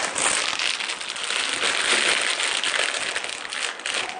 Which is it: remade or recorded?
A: recorded